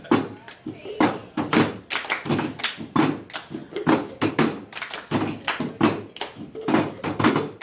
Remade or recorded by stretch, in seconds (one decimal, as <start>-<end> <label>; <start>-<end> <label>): 0.0-7.6 recorded